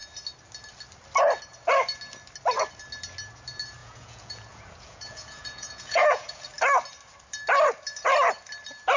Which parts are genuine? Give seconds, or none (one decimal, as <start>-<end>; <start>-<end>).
0.0-3.8; 6.5-9.0